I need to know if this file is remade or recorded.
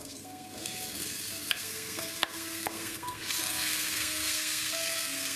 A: remade